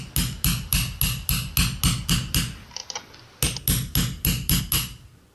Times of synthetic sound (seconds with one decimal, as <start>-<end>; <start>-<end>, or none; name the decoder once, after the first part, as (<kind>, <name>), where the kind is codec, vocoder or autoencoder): none